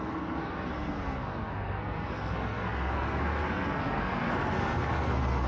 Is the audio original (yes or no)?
no